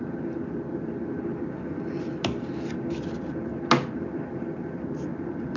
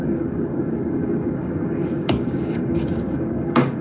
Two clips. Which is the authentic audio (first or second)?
first